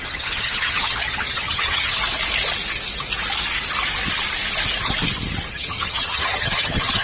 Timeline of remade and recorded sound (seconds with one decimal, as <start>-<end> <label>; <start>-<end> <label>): 0.0-2.0 remade; 2.0-5.5 recorded; 5.5-7.0 remade